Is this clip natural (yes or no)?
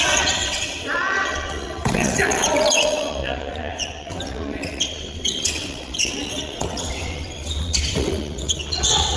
no